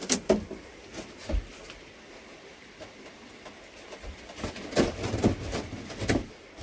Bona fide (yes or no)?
yes